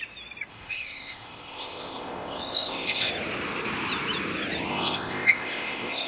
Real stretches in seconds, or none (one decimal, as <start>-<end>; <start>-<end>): 0.0-0.5; 3.1-4.7